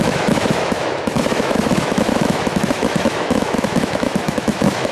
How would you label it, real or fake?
fake